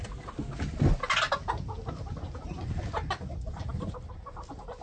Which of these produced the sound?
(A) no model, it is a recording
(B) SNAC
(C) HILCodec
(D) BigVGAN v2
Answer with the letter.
A